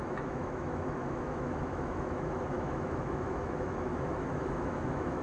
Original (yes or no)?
no